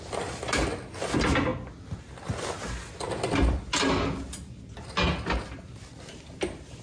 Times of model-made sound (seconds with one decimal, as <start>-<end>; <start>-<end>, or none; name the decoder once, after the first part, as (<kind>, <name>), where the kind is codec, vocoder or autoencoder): none